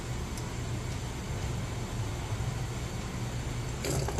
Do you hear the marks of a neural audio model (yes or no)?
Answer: no